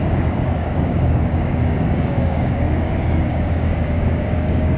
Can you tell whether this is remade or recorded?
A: remade